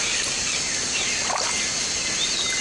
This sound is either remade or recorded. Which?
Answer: recorded